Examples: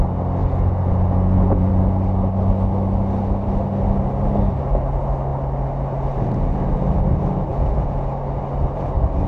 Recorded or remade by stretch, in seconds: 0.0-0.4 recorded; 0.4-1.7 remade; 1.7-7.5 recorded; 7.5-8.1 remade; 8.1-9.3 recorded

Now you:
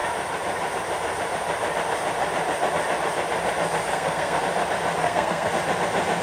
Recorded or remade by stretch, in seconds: 0.0-3.9 recorded; 3.9-4.4 remade; 4.4-5.0 recorded; 5.0-5.5 remade; 5.5-6.2 recorded

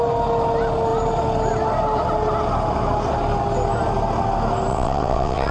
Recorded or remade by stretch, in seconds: 0.0-4.7 recorded; 4.7-5.5 remade